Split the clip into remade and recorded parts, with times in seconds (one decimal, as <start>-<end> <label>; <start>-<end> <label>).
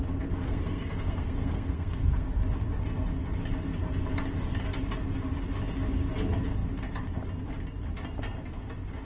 0.0-0.4 recorded; 0.4-2.4 remade; 2.4-9.0 recorded